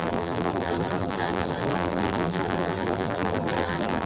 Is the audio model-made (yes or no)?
yes